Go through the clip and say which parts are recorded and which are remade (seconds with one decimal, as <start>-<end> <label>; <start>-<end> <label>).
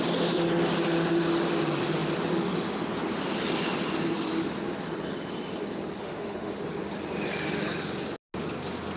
0.0-6.0 recorded; 6.0-6.5 remade; 6.5-9.0 recorded